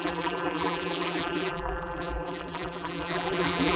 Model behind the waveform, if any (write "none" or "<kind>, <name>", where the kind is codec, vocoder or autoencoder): vocoder, BigVGAN v2